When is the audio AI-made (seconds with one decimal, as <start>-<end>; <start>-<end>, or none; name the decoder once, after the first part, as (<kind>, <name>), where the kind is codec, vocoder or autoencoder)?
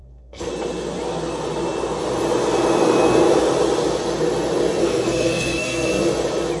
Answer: 0.0-0.5 (codec, SNAC); 4.8-5.9